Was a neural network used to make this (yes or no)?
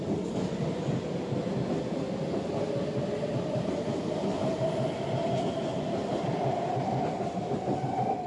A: no